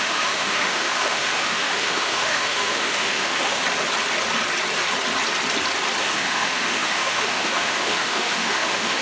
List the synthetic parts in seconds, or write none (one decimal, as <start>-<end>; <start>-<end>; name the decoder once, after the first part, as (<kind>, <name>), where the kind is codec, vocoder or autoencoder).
0.0-3.6 (autoencoder, DAC-VAE); 6.0-9.0